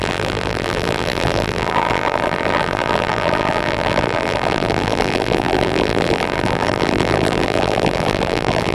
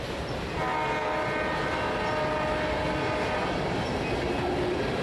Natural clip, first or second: second